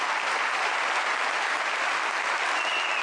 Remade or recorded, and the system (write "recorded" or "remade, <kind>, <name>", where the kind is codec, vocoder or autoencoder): recorded